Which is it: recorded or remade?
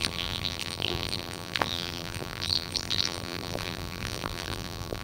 remade